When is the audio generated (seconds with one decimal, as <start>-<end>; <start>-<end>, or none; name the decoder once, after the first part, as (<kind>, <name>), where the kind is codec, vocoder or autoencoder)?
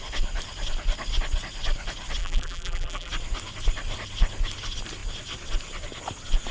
2.2-3.1 (vocoder, BigVGAN v2)